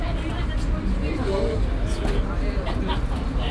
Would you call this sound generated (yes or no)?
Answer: no